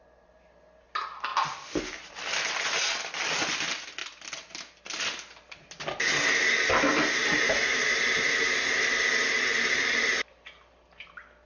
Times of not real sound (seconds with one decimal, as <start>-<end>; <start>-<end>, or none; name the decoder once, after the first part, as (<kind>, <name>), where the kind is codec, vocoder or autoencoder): 7.2-8.6 (vocoder, BigVGAN v2)